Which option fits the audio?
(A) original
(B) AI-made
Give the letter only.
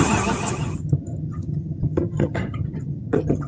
B